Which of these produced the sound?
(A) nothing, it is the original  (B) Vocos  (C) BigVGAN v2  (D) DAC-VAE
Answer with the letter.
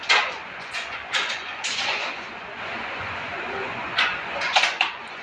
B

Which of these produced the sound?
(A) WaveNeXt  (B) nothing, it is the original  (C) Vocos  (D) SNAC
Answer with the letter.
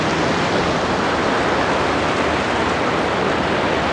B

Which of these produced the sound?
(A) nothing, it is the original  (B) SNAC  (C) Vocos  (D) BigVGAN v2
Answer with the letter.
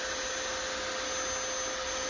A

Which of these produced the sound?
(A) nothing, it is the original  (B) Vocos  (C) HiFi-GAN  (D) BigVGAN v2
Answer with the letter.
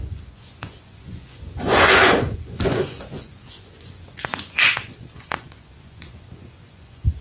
B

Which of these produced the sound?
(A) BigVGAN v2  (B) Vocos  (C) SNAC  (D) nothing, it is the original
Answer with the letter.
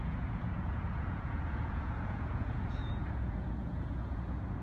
B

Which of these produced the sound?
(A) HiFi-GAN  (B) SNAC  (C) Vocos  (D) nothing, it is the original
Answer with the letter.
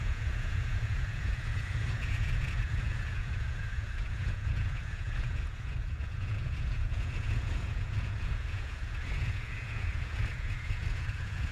C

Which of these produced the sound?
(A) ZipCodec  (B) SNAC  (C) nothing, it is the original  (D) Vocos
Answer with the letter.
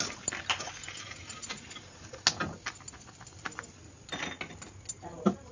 C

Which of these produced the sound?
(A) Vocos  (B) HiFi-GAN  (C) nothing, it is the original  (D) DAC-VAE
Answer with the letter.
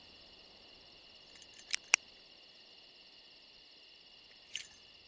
C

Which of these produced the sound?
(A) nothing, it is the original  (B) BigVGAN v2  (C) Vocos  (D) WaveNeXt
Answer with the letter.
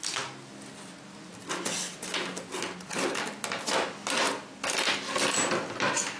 A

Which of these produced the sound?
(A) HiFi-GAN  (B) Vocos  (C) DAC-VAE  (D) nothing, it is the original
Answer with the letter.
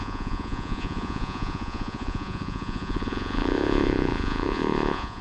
B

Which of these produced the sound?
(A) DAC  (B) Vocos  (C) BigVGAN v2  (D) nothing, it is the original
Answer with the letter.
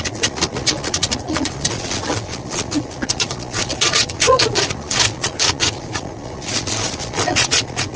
B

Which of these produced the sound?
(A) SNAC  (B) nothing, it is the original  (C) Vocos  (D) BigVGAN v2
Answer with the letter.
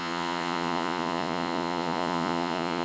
C